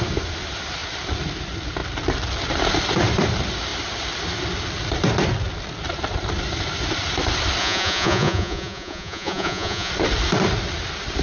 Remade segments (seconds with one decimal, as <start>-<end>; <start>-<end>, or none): 7.6-9.9